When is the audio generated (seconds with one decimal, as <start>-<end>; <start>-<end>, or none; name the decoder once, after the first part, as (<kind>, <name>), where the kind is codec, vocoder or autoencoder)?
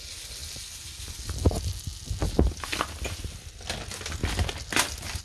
none